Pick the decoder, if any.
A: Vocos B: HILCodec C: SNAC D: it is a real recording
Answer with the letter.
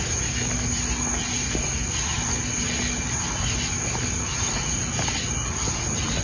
D